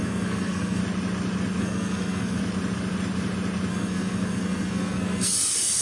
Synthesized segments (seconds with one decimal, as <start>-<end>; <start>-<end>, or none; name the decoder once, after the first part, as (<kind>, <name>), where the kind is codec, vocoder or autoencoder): 0.0-0.8 (codec, SNAC); 1.6-2.4; 3.7-5.8

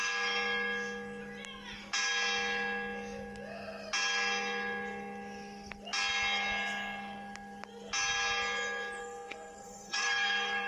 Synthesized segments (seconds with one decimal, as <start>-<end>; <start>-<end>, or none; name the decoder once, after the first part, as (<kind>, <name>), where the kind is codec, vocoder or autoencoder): 9.0-10.7 (codec, SNAC)

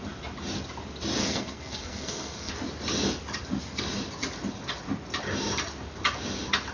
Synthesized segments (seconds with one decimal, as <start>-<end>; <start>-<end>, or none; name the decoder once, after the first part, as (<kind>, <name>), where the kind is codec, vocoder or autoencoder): 1.2-2.5 (codec, SNAC)

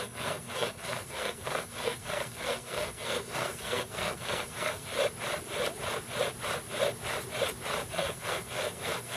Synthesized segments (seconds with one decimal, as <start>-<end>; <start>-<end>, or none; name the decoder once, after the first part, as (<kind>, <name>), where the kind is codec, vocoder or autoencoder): 0.0-4.9 (codec, SNAC); 7.9-9.2

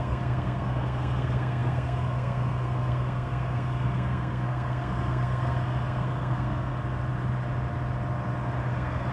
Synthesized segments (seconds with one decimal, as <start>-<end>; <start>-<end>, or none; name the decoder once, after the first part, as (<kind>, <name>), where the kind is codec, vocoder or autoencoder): 0.0-6.7 (codec, SNAC); 8.7-9.1

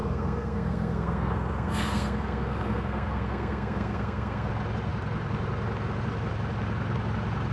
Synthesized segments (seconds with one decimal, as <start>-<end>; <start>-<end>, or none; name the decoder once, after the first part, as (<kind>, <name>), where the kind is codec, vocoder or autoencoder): 0.0-4.5 (codec, SNAC)